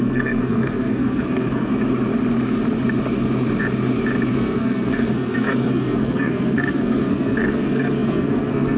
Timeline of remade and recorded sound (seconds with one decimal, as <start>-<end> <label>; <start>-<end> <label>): 0.0-1.7 remade; 1.7-4.3 recorded; 4.3-8.8 remade